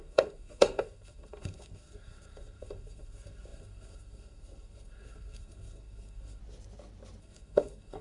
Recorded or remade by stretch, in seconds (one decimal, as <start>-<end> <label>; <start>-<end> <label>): 0.0-6.4 remade; 6.4-7.2 recorded; 7.2-8.0 remade